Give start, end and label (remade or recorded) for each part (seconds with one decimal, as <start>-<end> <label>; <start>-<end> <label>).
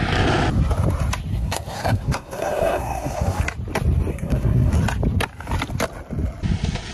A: 0.0-1.3 recorded; 1.3-3.4 remade; 3.4-4.1 recorded; 4.1-4.7 remade; 4.7-6.9 recorded